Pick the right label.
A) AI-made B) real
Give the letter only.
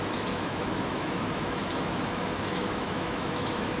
A